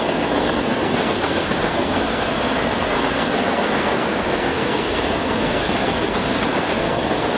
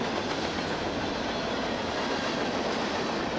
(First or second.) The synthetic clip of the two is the first